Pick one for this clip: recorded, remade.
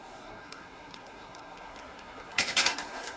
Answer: remade